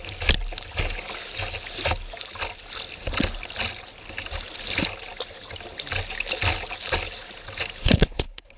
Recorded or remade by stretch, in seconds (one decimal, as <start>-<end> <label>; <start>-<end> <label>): 0.0-7.8 recorded; 7.8-8.6 remade